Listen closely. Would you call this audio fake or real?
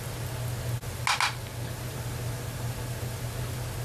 real